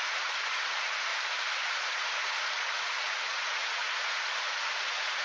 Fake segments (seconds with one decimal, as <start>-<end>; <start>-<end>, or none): 0.0-1.1; 1.7-5.2